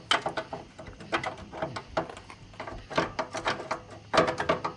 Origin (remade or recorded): recorded